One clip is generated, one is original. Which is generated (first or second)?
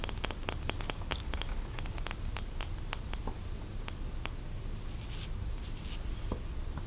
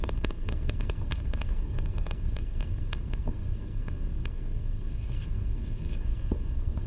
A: second